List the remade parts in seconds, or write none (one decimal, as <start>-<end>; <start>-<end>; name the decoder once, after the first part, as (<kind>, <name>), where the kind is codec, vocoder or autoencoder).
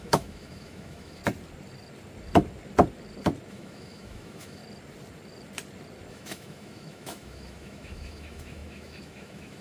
0.0-1.2 (autoencoder, DAC-VAE); 3.5-4.6; 6.1-9.6